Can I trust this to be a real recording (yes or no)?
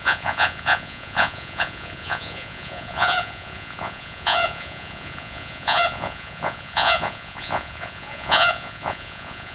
no